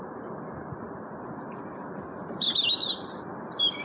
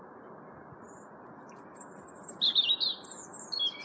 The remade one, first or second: first